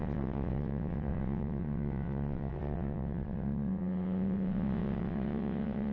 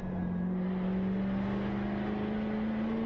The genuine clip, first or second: second